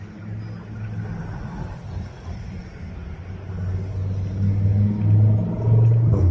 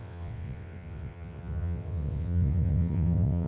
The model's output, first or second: second